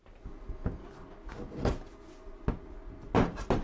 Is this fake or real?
real